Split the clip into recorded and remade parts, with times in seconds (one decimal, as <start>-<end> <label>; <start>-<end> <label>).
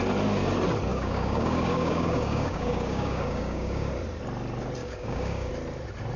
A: 0.0-0.9 recorded; 0.9-3.9 remade; 3.9-4.8 recorded; 4.8-5.5 remade; 5.5-6.2 recorded